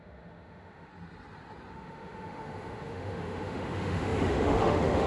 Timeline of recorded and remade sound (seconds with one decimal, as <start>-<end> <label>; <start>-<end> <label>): 0.0-0.9 remade; 0.9-1.7 recorded; 1.7-5.1 remade

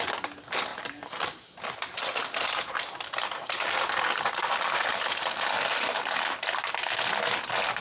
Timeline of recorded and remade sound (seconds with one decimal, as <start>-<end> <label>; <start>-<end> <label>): 0.0-0.7 recorded; 0.7-5.4 remade; 5.4-7.8 recorded

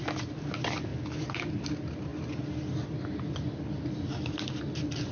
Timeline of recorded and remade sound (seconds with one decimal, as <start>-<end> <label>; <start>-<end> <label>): 0.0-5.1 recorded

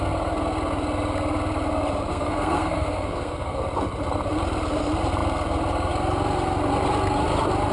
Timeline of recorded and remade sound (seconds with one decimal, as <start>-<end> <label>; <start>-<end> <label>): 0.0-2.1 recorded; 2.1-3.6 remade; 3.6-7.7 recorded

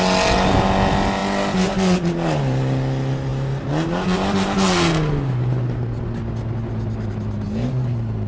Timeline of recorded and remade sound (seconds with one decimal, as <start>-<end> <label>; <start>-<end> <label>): 0.0-8.3 recorded